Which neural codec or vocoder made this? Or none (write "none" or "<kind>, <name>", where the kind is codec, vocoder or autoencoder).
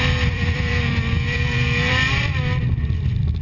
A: vocoder, BigVGAN v2